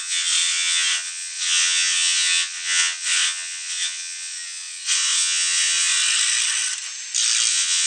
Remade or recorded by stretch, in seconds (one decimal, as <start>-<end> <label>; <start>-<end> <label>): 0.0-6.0 remade; 6.0-7.5 recorded; 7.5-7.9 remade